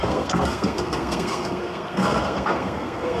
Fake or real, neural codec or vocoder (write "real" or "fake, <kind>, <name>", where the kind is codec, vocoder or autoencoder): fake, codec, SNAC